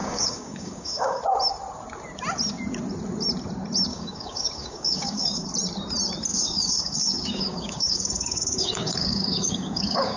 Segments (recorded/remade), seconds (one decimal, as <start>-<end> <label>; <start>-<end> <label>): 0.0-1.2 remade; 1.2-3.9 recorded; 3.9-5.5 remade; 5.5-6.3 recorded; 6.3-10.2 remade